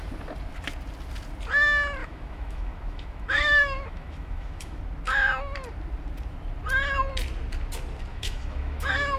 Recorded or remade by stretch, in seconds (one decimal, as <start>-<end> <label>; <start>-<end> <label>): 0.0-2.0 recorded; 2.0-4.8 remade; 4.8-8.1 recorded; 8.1-9.2 remade

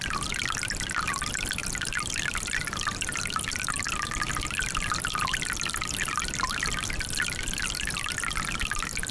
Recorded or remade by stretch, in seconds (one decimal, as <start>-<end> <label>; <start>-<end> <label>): 0.0-9.1 recorded

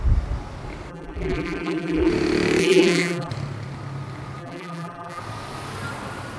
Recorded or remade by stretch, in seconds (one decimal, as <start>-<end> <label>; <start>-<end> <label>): 0.0-0.9 recorded; 0.9-2.1 remade; 2.1-2.6 recorded; 2.6-3.3 remade; 3.3-4.4 recorded; 4.4-5.2 remade; 5.2-6.4 recorded

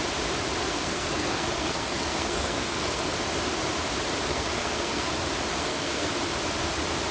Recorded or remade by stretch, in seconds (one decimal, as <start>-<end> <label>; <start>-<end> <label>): 0.0-0.6 recorded; 0.6-3.0 remade; 3.0-4.3 recorded; 4.3-5.1 remade; 5.1-5.5 recorded; 5.5-6.1 remade; 6.1-7.1 recorded

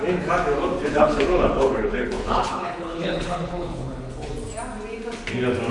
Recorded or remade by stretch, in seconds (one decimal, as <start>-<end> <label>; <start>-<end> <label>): 0.0-0.9 recorded; 0.9-4.3 remade; 4.3-5.7 recorded